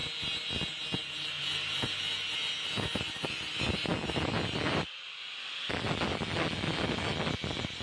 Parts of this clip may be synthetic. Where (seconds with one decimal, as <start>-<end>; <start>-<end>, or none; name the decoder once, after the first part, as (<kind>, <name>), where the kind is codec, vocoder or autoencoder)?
none